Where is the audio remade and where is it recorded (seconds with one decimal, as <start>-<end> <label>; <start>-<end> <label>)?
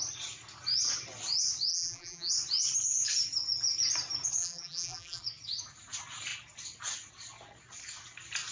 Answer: 0.0-1.7 recorded; 1.7-2.3 remade; 2.3-4.4 recorded; 4.4-5.2 remade; 5.2-8.5 recorded